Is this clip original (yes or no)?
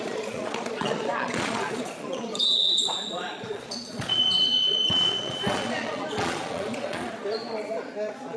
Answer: no